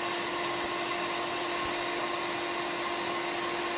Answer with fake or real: real